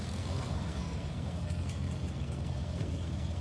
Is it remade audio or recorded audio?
remade